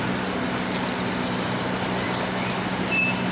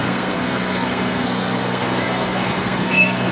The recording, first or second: first